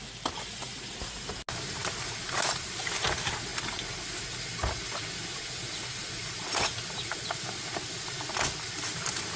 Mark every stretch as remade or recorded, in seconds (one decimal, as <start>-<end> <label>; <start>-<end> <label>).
0.0-9.4 recorded